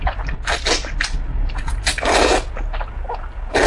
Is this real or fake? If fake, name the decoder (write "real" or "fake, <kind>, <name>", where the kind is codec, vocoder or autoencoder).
real